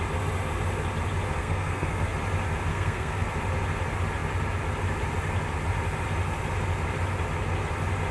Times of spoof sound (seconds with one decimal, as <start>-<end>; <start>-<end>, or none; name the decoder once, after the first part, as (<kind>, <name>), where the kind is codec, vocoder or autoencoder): 1.4-2.1 (codec, SNAC); 2.7-3.3